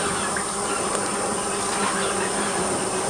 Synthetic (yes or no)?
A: no